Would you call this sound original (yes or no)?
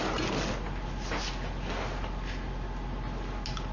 yes